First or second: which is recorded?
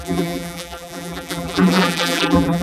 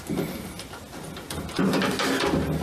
second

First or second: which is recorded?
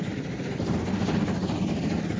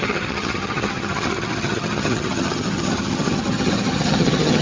first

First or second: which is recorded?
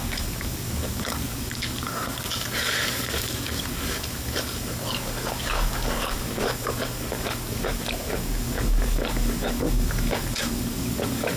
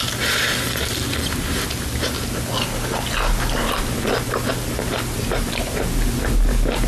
second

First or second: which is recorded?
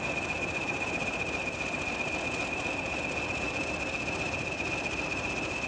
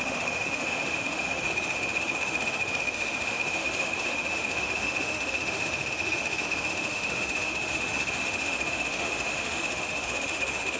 first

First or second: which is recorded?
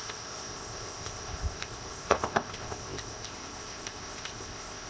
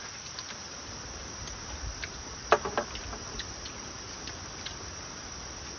second